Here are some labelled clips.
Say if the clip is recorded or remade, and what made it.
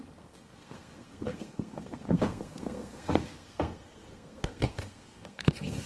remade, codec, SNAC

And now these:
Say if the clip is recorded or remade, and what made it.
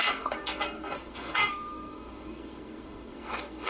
remade, codec, SNAC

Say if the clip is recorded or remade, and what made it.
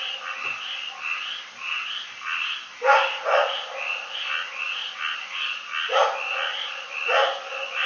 recorded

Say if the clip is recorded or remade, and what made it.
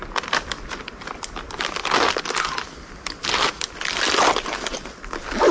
recorded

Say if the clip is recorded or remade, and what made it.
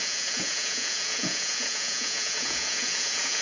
remade, vocoder, Vocos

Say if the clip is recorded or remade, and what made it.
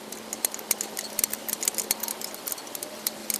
recorded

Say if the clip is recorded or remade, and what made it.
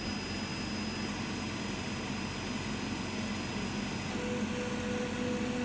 recorded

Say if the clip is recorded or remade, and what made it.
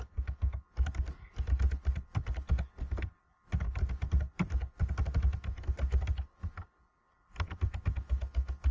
recorded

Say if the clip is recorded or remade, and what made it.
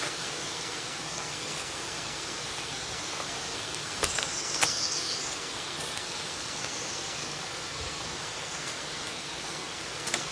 remade, codec, SNAC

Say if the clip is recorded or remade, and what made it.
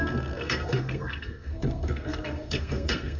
remade, codec, SNAC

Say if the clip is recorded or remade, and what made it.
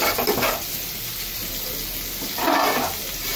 recorded